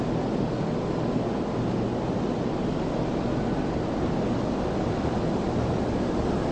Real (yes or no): yes